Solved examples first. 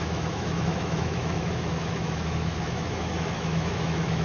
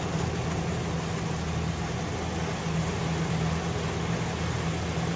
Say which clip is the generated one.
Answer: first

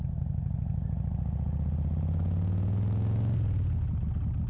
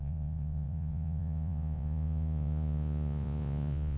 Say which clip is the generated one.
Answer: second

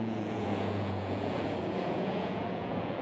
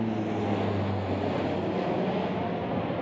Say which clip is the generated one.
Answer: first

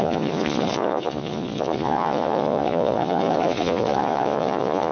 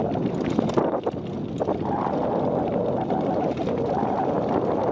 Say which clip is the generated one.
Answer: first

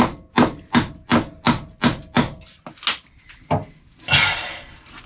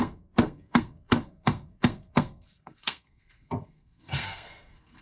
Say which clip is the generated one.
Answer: second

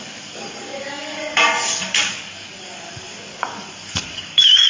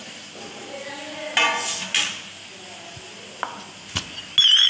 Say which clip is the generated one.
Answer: first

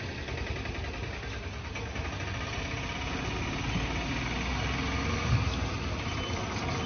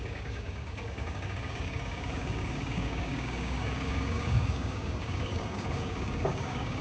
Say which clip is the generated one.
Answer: second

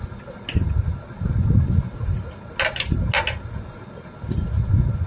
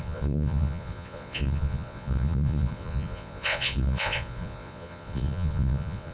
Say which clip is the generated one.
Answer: second